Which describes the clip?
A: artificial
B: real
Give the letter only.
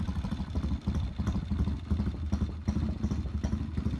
B